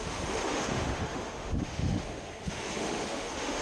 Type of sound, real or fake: fake